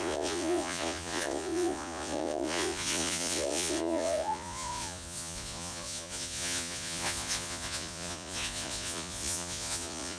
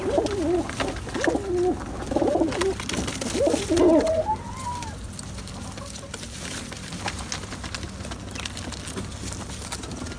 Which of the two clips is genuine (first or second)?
second